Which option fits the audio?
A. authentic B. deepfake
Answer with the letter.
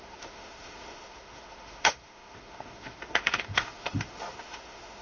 B